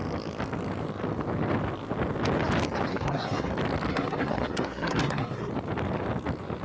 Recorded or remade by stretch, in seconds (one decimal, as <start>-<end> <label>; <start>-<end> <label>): 0.0-2.9 recorded; 2.9-3.5 remade; 3.5-3.9 recorded; 3.9-5.5 remade; 5.5-6.6 recorded